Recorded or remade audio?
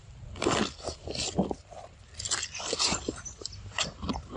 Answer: remade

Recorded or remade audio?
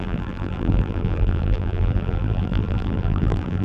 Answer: remade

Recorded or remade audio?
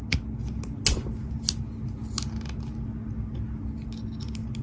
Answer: recorded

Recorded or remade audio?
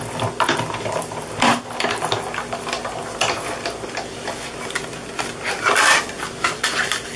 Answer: recorded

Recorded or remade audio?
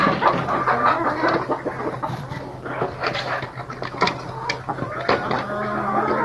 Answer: recorded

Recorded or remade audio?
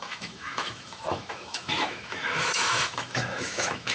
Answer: remade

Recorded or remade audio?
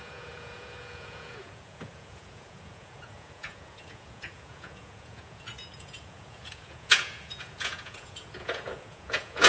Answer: remade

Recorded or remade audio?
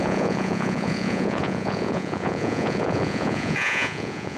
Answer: remade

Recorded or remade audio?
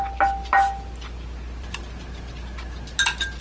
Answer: recorded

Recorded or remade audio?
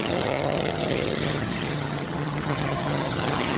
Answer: remade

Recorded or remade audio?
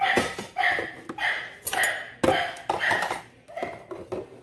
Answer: recorded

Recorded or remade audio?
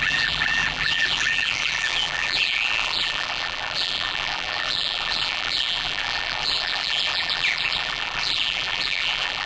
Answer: remade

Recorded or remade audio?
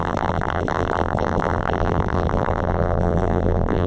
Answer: remade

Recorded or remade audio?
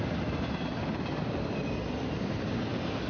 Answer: recorded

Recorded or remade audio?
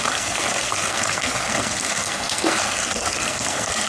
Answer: remade